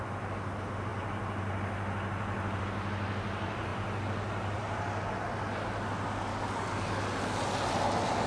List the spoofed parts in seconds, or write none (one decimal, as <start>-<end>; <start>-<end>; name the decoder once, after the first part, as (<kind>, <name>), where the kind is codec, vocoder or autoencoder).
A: 6.3-7.0 (codec, DAC)